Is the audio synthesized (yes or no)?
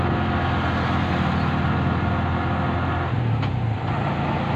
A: no